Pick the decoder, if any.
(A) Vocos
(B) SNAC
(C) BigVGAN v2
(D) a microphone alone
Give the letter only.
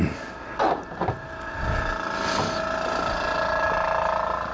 D